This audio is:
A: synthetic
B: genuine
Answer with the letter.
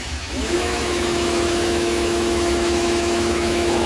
A